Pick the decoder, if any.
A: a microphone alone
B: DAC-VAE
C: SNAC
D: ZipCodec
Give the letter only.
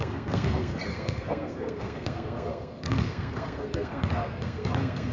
C